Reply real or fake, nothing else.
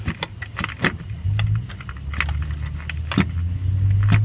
real